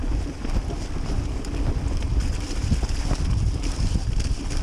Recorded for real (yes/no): yes